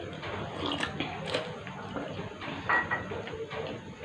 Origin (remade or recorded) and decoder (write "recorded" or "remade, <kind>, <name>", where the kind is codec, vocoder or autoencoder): recorded